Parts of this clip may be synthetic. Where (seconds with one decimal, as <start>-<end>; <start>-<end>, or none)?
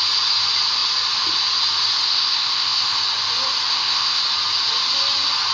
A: 2.1-3.0; 3.7-4.2